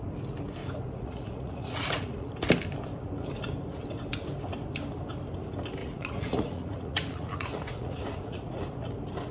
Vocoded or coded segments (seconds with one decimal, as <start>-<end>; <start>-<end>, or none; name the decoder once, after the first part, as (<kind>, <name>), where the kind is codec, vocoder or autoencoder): 0.6-2.3 (vocoder, Vocos); 5.8-8.6

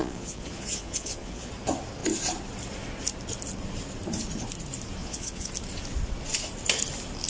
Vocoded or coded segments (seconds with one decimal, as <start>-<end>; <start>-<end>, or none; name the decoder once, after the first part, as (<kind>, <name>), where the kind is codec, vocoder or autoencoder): 0.0-1.5 (vocoder, Vocos); 5.0-5.5

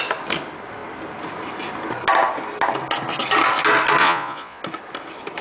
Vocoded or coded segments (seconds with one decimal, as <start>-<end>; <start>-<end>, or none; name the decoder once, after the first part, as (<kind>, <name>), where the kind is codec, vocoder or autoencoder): 4.0-4.6 (vocoder, Vocos)

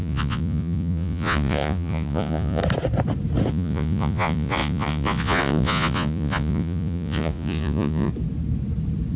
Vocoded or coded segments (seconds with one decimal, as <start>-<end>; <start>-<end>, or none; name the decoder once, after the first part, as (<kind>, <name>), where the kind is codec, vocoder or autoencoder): 0.0-2.6 (vocoder, Vocos); 3.5-8.1

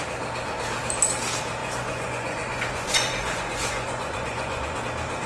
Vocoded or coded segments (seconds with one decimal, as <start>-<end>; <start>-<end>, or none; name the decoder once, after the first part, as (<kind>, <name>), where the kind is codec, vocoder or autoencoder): 1.6-4.8 (vocoder, Vocos)

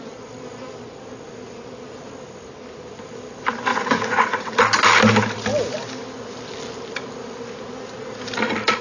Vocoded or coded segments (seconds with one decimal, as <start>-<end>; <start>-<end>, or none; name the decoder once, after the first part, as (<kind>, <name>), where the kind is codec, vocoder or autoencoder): 3.7-4.5 (vocoder, Vocos)

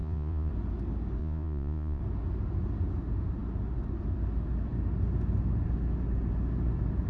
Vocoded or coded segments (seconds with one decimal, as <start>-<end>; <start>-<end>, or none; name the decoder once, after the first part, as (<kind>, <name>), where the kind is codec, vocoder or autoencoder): 0.0-0.5 (vocoder, Vocos); 1.2-2.0

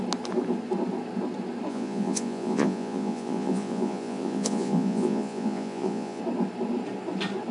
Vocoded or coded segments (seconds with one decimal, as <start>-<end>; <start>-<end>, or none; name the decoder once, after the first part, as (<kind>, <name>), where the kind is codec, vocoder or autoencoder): 1.7-6.2 (vocoder, Vocos)